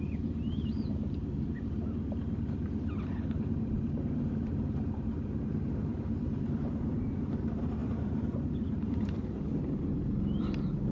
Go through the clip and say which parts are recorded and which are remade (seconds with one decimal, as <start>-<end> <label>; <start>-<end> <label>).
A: 0.0-10.9 remade